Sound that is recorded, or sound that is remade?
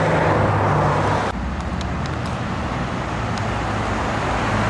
recorded